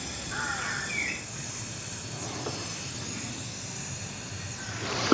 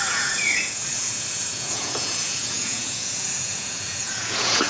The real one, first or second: first